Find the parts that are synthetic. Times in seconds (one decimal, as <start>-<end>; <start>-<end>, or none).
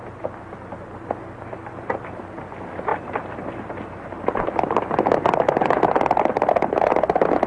none